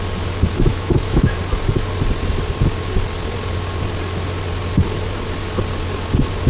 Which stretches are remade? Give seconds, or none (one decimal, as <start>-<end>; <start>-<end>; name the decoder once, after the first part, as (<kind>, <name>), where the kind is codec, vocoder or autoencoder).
0.7-1.4 (autoencoder, DAC-VAE)